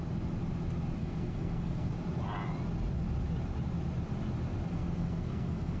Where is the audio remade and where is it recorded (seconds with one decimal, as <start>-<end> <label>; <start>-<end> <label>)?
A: 0.0-1.0 recorded; 1.0-1.9 remade; 1.9-4.7 recorded; 4.7-5.8 remade

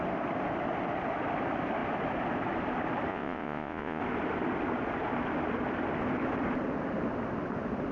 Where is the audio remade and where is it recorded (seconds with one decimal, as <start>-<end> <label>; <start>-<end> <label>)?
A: 0.0-3.1 recorded; 3.1-4.0 remade; 4.0-7.9 recorded

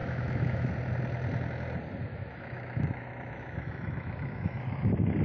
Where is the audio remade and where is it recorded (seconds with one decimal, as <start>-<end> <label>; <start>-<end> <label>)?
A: 0.0-0.7 remade; 0.7-2.1 recorded; 2.1-5.2 remade

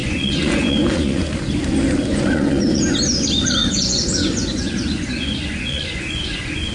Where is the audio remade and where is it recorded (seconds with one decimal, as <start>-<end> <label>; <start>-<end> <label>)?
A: 0.0-1.3 remade; 1.3-2.1 recorded; 2.1-2.8 remade; 2.8-3.6 recorded; 3.6-6.7 remade

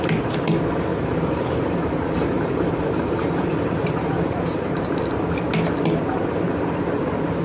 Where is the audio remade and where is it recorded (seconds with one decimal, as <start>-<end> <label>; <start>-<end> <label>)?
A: 0.0-0.9 recorded; 0.9-4.9 remade; 4.9-7.4 recorded

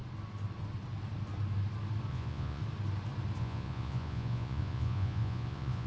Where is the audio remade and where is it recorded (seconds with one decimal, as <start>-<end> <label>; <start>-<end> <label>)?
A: 0.0-2.1 recorded; 2.1-2.6 remade; 2.6-3.4 recorded; 3.4-5.9 remade

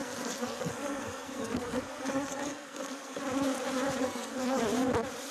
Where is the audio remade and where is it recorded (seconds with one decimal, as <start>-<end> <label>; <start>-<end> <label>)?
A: 0.0-3.2 remade; 3.2-4.0 recorded; 4.0-4.6 remade; 4.6-5.3 recorded